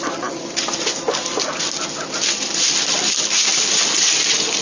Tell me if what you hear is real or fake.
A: real